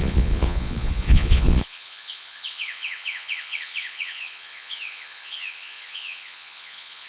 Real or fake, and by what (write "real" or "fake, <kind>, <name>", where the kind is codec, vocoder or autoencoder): fake, vocoder, Vocos